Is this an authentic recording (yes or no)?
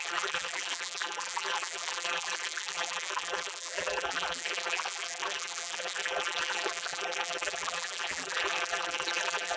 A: no